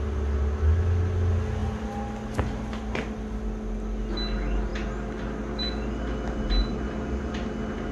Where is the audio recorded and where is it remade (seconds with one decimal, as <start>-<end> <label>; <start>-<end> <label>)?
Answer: 0.0-7.9 recorded